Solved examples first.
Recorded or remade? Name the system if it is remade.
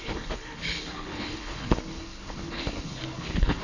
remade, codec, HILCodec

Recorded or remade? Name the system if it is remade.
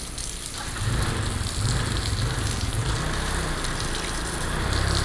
recorded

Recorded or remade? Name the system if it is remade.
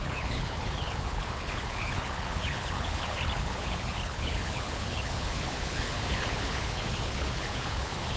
remade, codec, HILCodec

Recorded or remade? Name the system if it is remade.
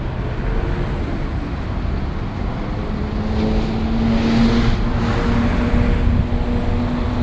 recorded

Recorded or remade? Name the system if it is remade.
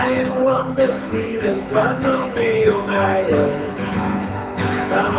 remade, codec, HILCodec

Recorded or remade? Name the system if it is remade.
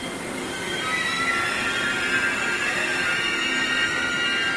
recorded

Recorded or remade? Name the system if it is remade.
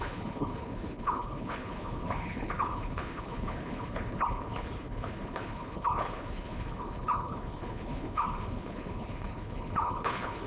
remade, codec, HILCodec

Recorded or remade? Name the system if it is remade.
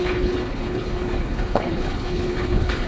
remade, codec, HILCodec